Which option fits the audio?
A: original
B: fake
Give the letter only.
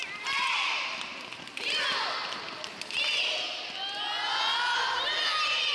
A